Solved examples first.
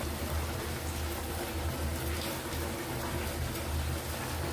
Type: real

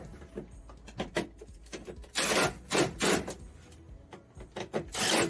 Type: real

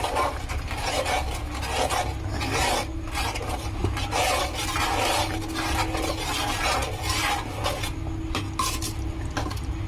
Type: real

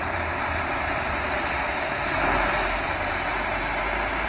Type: fake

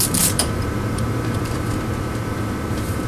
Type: fake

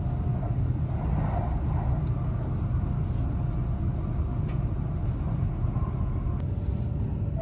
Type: real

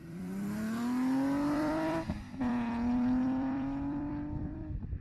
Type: fake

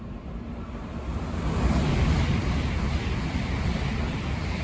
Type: fake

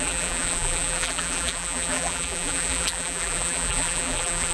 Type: fake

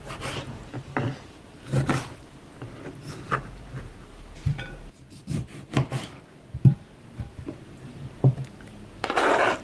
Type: fake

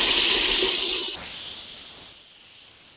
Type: real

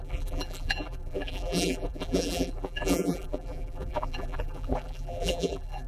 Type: fake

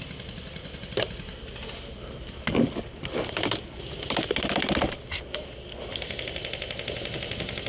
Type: real